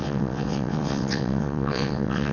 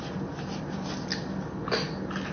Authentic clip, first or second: second